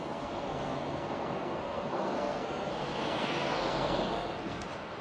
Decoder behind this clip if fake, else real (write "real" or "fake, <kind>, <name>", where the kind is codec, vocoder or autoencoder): fake, codec, SNAC